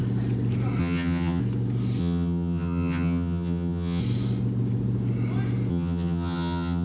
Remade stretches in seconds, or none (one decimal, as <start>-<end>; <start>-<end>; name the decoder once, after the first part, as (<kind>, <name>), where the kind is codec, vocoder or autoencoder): 0.8-1.4 (vocoder, HiFi-GAN); 2.0-4.0; 5.7-6.8